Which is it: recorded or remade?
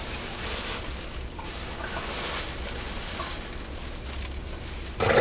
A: recorded